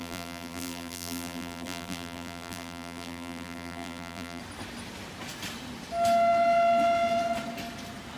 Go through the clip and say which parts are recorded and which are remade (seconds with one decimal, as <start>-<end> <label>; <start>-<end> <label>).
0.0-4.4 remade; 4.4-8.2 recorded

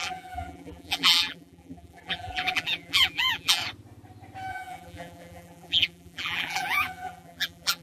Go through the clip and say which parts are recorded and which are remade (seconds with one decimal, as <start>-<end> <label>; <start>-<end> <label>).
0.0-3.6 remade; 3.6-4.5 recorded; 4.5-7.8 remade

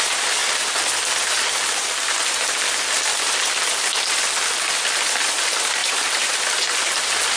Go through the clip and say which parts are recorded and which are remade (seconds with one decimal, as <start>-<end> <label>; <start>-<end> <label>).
0.0-5.8 recorded; 5.8-6.4 remade; 6.4-7.4 recorded

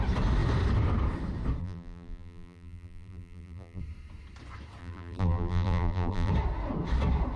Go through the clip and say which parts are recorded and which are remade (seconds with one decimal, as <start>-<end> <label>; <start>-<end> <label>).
0.0-1.6 recorded; 1.6-3.8 remade; 3.8-4.8 recorded; 4.8-6.3 remade; 6.3-7.4 recorded

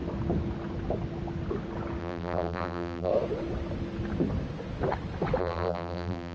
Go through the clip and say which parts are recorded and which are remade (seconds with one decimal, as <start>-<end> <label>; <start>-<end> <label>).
0.0-2.0 recorded; 2.0-3.1 remade; 3.1-5.4 recorded; 5.4-6.3 remade

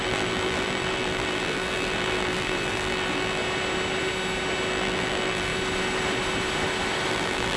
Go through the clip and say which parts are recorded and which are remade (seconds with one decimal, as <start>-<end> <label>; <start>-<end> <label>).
0.0-3.4 remade; 3.4-4.7 recorded; 4.7-5.5 remade; 5.5-7.1 recorded; 7.1-7.6 remade